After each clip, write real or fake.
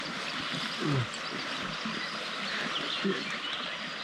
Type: real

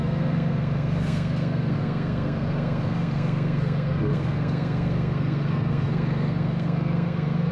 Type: fake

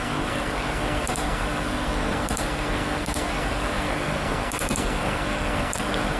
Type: fake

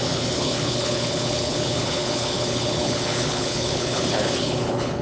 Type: fake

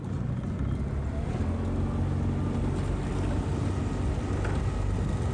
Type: real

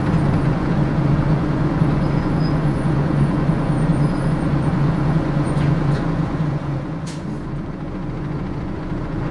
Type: fake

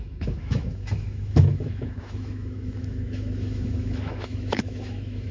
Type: fake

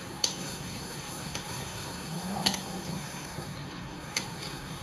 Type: fake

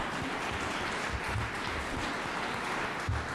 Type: real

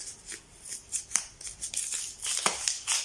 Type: real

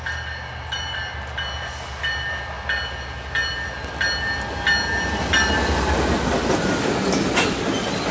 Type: real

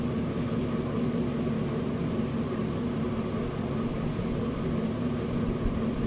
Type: real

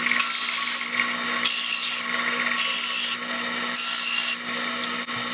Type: real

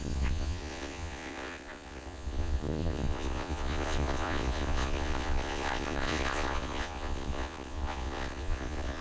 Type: fake